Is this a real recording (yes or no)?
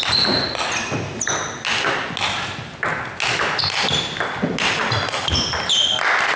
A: yes